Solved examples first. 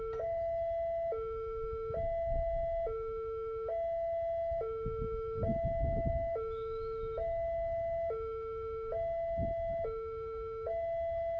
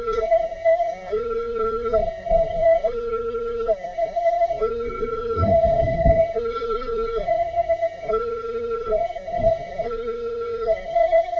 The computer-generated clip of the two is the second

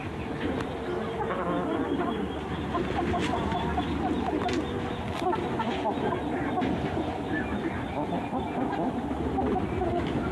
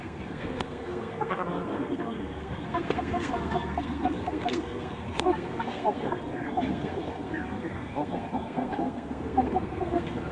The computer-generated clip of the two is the second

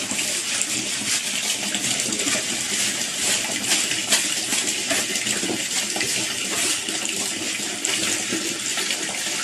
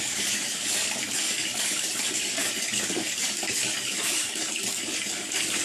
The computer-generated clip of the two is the second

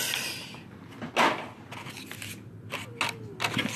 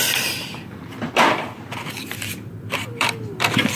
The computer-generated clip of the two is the second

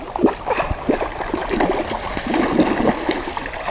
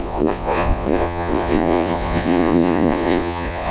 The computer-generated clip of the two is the second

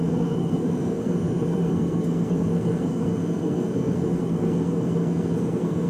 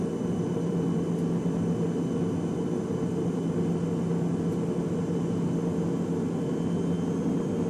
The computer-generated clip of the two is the first